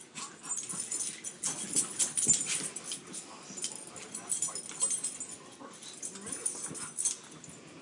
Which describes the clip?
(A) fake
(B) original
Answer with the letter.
B